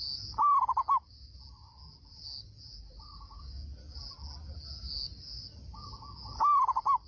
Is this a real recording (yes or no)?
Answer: yes